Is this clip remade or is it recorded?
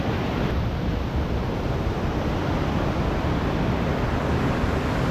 recorded